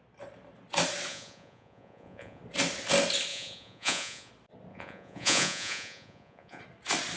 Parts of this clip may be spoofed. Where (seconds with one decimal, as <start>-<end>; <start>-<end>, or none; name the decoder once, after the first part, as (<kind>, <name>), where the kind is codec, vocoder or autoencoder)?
1.1-2.4 (vocoder, Vocos); 3.3-4.3; 4.7-6.6